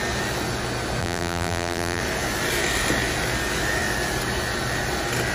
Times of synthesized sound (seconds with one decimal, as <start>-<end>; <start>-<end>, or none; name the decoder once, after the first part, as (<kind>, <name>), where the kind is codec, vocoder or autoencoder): 1.0-2.0 (vocoder, BigVGAN v2)